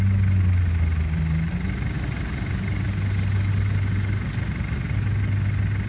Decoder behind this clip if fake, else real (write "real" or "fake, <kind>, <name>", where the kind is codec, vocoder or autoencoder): real